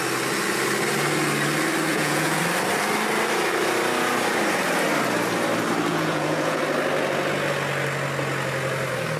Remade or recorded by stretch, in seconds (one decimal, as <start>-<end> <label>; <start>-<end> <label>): 0.0-1.9 recorded; 1.9-2.4 remade; 2.4-5.9 recorded; 5.9-6.6 remade; 6.6-9.2 recorded